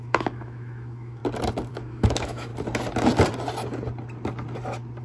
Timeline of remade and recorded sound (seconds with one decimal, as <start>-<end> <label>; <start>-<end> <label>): 0.0-1.2 remade; 1.2-1.7 recorded; 1.7-2.5 remade; 2.5-5.0 recorded